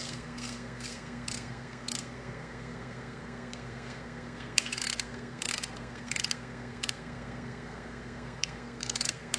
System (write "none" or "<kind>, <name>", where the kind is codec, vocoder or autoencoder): codec, SNAC